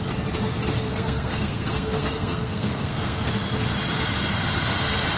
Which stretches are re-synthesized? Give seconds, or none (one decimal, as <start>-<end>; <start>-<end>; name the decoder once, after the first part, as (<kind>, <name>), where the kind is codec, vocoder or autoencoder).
0.9-3.3 (codec, SNAC)